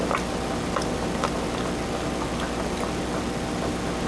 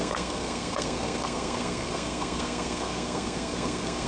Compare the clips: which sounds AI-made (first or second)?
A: second